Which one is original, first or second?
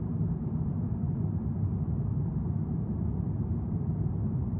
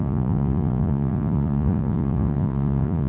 first